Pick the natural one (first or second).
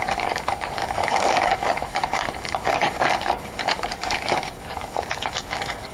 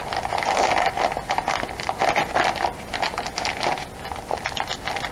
second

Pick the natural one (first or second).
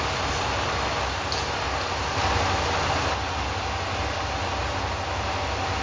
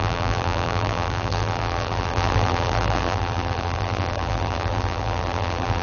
first